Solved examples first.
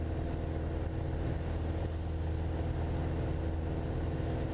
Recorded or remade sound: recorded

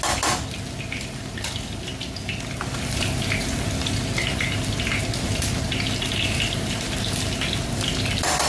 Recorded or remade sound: recorded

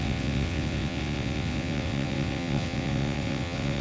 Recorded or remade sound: remade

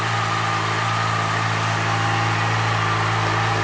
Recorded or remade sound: recorded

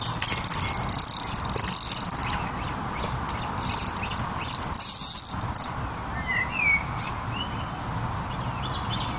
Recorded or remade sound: recorded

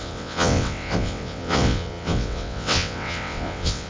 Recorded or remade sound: remade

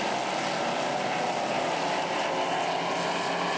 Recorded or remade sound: recorded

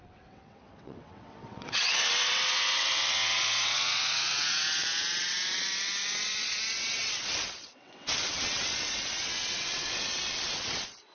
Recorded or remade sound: remade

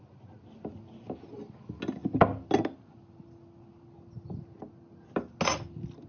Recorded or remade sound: recorded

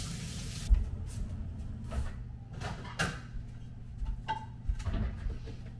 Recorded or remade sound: recorded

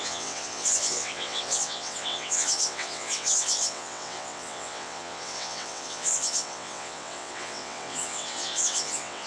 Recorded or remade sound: remade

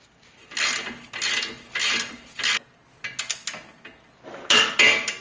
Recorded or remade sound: recorded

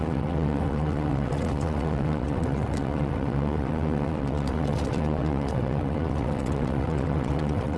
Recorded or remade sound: remade